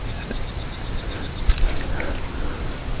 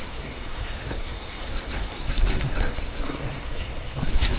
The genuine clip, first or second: first